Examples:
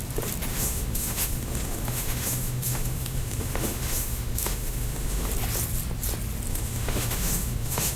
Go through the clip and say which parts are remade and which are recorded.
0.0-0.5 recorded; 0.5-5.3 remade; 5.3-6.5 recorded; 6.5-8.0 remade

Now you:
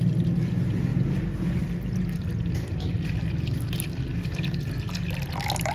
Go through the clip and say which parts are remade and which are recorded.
0.0-5.7 recorded